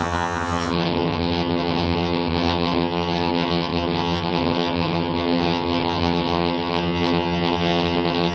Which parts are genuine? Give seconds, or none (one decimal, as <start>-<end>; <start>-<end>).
none